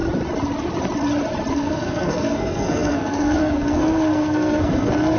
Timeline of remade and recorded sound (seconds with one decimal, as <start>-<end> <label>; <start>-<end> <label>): 0.0-1.5 recorded; 1.5-5.2 remade